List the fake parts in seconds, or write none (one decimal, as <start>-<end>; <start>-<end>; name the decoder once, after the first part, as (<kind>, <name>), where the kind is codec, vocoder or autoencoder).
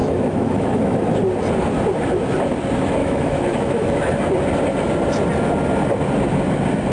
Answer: 0.0-1.0 (autoencoder, DAC-VAE); 3.0-4.0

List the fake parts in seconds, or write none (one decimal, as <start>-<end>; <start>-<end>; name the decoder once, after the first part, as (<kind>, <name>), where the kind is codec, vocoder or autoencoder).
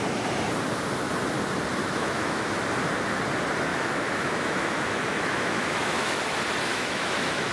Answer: 1.8-2.5 (autoencoder, DAC-VAE); 3.7-6.2; 6.7-7.5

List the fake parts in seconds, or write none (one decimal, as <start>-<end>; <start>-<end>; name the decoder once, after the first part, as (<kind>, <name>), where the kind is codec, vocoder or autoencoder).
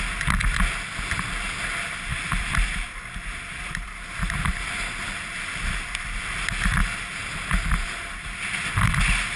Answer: none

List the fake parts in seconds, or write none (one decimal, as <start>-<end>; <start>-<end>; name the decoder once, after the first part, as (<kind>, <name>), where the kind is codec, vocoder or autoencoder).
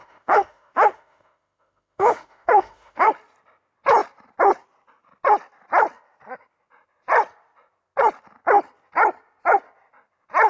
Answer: 0.0-3.1 (autoencoder, DAC-VAE)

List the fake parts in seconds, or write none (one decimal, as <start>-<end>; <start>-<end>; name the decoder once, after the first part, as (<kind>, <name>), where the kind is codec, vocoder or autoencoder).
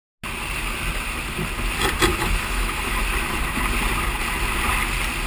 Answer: 2.1-3.0 (autoencoder, DAC-VAE)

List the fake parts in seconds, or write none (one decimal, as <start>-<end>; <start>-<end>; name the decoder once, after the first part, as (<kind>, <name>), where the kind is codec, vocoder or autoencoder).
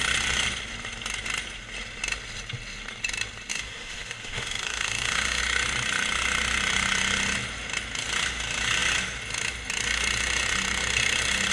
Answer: 3.5-5.4 (autoencoder, DAC-VAE)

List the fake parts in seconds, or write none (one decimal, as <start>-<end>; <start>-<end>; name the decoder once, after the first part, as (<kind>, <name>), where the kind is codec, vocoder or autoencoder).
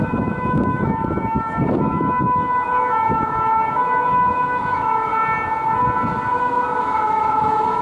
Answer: 0.0-5.1 (autoencoder, DAC-VAE); 6.4-7.8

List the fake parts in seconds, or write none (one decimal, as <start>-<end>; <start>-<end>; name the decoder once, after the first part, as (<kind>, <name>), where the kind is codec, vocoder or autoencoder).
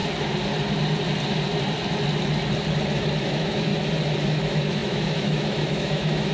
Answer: 3.2-3.7 (autoencoder, DAC-VAE); 4.3-6.3